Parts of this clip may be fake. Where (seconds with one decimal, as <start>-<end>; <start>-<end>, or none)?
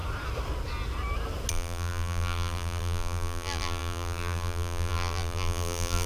1.5-6.1